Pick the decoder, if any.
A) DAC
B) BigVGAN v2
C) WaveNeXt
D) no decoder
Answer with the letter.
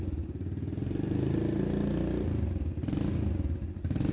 D